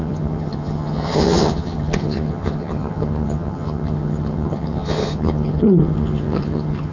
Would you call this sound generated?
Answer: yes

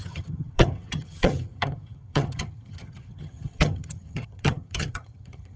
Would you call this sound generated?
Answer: yes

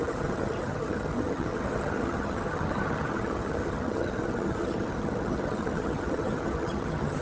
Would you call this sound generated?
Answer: yes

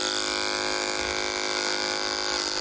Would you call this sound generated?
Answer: no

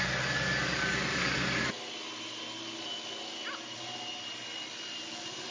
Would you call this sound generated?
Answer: no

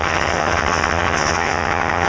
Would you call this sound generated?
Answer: yes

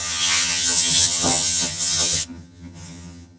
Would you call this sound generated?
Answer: yes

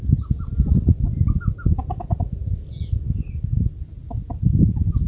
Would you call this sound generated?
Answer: no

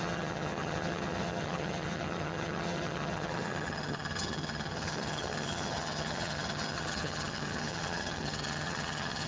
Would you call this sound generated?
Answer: yes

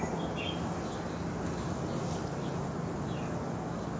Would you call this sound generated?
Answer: no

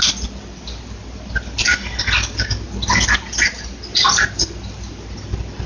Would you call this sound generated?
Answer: no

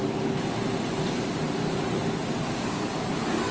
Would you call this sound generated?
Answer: no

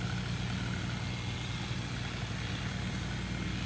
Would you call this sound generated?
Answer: no